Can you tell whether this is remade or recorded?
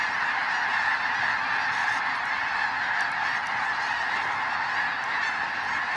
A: recorded